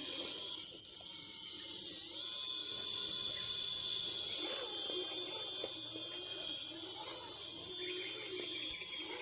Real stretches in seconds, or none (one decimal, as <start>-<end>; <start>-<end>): 0.8-2.6; 4.4-6.3; 7.7-9.2